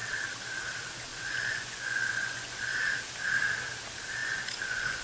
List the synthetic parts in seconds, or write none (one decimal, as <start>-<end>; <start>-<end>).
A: 1.1-2.7; 4.2-5.0